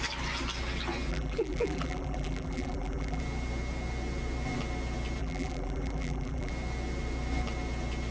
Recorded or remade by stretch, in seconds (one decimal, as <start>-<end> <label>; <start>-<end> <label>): 0.0-1.1 recorded; 1.1-3.2 remade; 3.2-5.2 recorded; 5.2-6.5 remade; 6.5-8.1 recorded